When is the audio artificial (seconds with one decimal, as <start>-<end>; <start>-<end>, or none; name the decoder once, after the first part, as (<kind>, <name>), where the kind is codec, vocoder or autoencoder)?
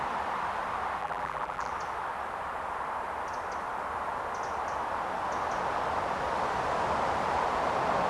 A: 1.0-1.7 (vocoder, BigVGAN v2)